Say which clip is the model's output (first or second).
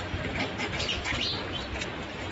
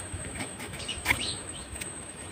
second